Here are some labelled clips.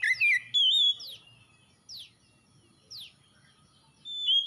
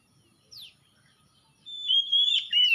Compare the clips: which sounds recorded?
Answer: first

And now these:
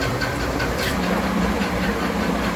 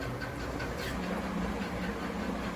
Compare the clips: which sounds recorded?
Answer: second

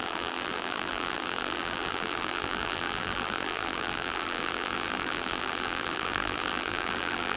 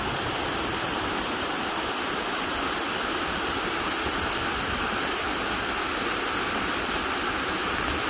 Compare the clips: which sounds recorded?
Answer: second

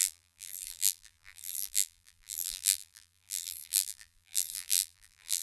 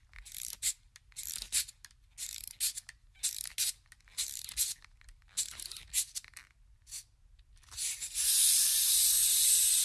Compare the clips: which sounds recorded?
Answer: second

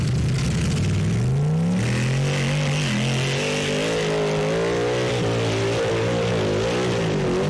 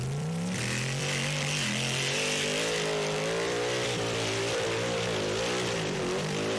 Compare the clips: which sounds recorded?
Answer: first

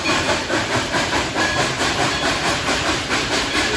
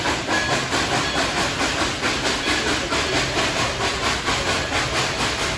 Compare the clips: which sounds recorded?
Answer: second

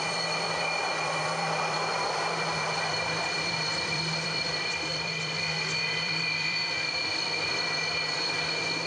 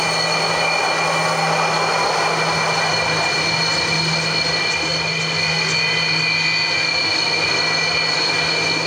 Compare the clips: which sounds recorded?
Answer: second